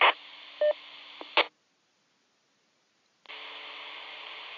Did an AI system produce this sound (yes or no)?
no